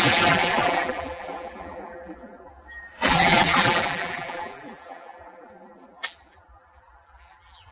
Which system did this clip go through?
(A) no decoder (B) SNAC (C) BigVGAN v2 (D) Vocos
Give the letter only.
C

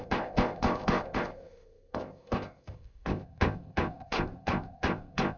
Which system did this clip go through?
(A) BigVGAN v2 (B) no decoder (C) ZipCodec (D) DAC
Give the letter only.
C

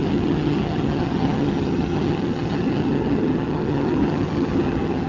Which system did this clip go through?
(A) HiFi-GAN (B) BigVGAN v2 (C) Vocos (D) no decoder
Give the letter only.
A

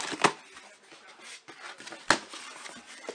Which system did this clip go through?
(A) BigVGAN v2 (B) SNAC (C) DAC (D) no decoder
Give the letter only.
D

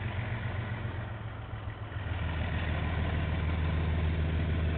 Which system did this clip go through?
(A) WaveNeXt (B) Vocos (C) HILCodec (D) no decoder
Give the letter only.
D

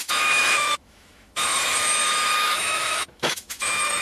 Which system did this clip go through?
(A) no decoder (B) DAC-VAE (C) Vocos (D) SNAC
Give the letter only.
B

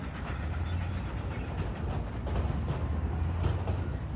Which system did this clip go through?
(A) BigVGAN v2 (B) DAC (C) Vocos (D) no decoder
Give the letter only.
D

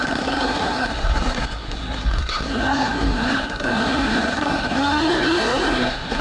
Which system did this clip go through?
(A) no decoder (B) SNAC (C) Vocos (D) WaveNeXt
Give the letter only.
B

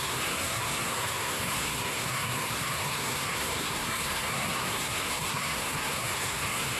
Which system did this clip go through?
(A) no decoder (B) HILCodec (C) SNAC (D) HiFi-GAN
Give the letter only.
C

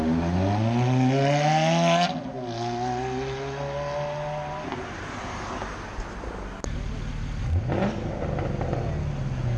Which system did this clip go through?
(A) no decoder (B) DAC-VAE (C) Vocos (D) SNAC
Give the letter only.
A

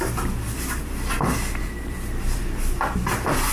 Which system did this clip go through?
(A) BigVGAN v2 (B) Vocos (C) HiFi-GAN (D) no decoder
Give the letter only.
A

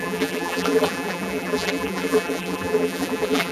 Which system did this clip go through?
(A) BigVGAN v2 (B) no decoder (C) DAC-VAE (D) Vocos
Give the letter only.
A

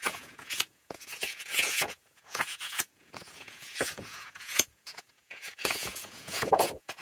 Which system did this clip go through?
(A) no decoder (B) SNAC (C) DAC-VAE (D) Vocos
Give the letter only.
D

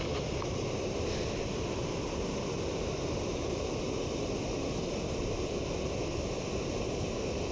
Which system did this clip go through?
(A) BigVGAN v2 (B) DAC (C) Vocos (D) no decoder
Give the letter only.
D